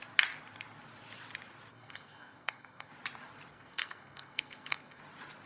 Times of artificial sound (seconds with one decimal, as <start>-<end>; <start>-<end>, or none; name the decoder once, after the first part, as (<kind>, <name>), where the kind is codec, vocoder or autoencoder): 1.7-2.9 (codec, SNAC); 3.5-5.0

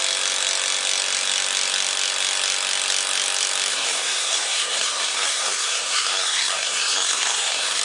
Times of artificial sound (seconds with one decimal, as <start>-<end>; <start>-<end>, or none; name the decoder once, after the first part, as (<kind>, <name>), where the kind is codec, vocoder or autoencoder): 3.7-7.8 (codec, SNAC)